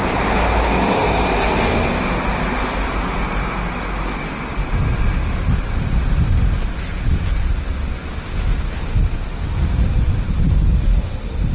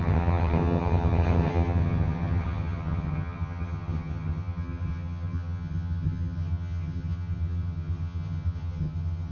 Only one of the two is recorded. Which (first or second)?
first